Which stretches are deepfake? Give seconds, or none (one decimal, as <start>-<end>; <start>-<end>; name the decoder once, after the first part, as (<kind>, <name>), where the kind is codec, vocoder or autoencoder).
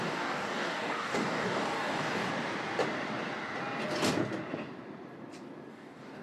0.0-2.3 (codec, DAC); 5.7-6.2